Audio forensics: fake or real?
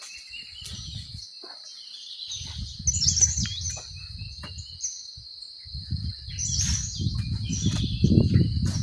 real